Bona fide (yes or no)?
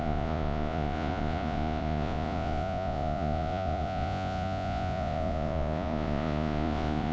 no